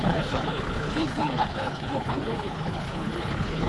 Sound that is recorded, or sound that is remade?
remade